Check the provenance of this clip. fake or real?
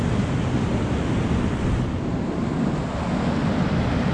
real